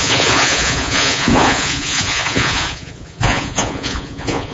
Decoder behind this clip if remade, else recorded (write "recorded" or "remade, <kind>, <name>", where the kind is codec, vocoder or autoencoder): remade, vocoder, Vocos